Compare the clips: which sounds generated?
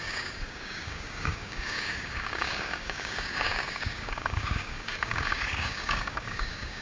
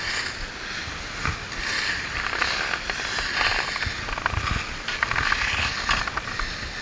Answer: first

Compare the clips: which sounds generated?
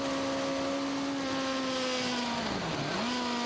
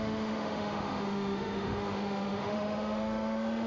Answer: second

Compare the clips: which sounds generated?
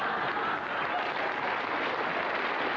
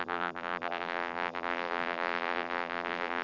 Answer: second